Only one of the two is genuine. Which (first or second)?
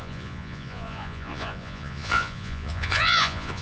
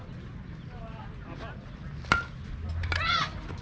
second